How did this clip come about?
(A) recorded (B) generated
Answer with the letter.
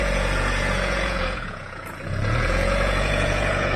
B